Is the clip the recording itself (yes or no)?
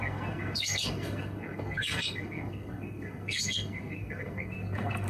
no